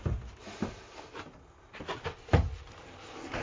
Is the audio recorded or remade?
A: recorded